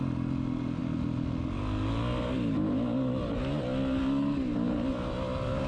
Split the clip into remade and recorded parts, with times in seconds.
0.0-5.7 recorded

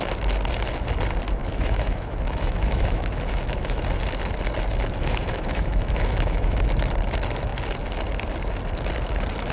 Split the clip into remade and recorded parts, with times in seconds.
0.0-1.4 recorded; 1.4-3.8 remade; 3.8-5.0 recorded; 5.0-6.9 remade; 6.9-9.5 recorded

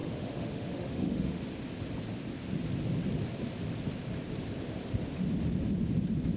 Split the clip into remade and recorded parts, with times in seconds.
0.0-1.4 remade; 1.4-6.4 recorded

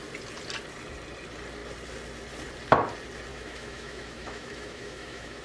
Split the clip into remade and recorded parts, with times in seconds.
0.0-3.3 recorded; 3.3-5.4 remade

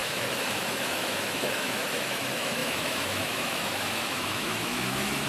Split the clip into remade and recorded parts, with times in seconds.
0.0-5.3 remade

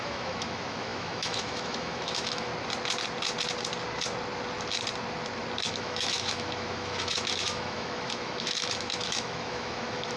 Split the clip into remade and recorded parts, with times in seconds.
0.0-2.5 remade; 2.5-5.7 recorded; 5.7-10.2 remade

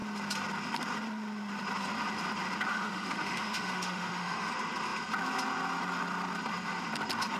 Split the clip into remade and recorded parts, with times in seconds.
0.0-2.7 recorded; 2.7-4.5 remade; 4.5-7.4 recorded

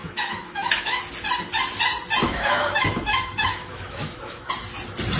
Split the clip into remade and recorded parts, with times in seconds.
0.0-1.0 remade; 1.0-2.2 recorded; 2.2-4.5 remade; 4.5-5.2 recorded